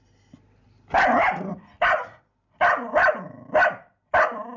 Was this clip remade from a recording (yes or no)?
no